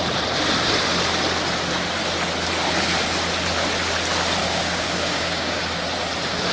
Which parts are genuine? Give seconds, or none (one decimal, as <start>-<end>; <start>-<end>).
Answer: 0.0-4.4; 5.6-6.5